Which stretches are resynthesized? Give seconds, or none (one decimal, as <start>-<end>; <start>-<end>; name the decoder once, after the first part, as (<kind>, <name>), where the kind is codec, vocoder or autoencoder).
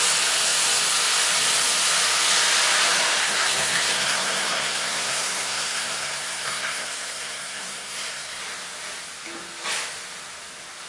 3.2-8.4 (codec, SNAC)